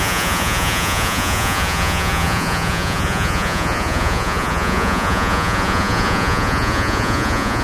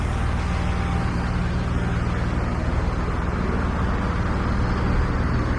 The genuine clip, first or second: second